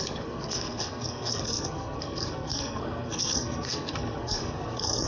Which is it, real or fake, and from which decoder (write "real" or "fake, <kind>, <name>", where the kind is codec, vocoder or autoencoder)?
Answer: fake, codec, SNAC